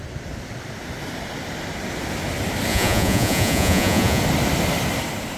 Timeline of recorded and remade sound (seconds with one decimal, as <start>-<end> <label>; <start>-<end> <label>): 0.0-2.7 recorded; 2.7-4.2 remade; 4.2-5.4 recorded